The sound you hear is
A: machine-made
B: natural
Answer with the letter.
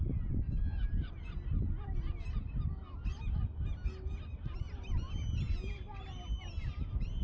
B